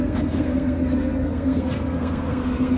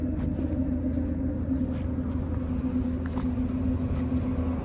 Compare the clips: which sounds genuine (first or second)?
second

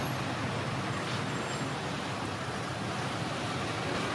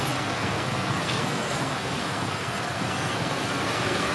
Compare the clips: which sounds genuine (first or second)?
first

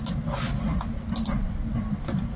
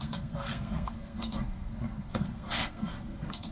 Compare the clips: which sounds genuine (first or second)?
first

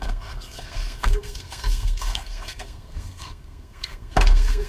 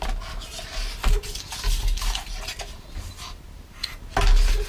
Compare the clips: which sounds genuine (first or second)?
second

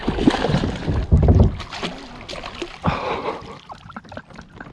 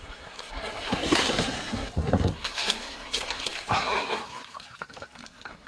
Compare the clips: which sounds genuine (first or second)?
first